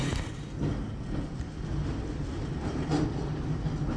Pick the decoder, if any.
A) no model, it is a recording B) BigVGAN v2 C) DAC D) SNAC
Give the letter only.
A